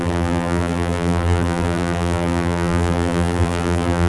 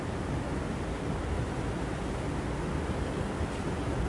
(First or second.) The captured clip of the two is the second